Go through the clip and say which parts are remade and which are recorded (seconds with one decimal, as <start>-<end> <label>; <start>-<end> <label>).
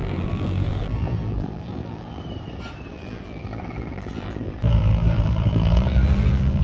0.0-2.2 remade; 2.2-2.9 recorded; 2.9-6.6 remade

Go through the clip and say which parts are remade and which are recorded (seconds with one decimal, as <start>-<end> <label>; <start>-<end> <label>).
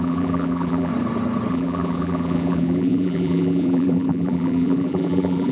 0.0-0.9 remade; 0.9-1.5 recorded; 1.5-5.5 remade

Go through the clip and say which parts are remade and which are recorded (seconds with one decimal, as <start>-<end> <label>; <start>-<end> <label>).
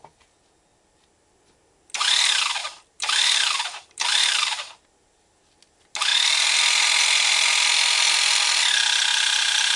0.0-2.6 recorded; 2.6-5.3 remade; 5.3-9.8 recorded